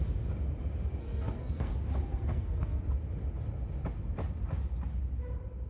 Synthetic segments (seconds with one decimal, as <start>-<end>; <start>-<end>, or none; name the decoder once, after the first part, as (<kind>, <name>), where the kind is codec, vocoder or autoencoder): 1.0-1.7 (codec, SNAC); 2.1-2.8